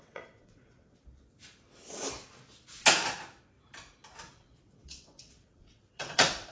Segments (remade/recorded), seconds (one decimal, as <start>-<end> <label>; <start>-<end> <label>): 0.0-1.0 remade; 1.0-4.3 recorded; 4.3-6.5 remade